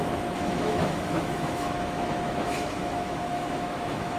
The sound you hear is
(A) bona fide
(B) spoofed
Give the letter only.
B